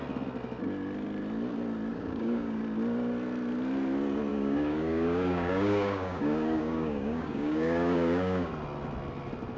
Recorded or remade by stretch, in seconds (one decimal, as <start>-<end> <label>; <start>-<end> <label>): 0.0-1.9 recorded; 1.9-2.6 remade; 2.6-4.3 recorded; 4.3-8.5 remade; 8.5-9.6 recorded